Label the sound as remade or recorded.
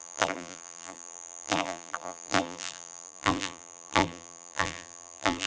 remade